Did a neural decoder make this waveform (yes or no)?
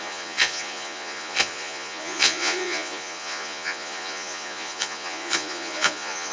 yes